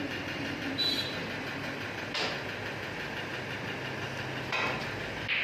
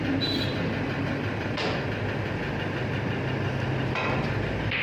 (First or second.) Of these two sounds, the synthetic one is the second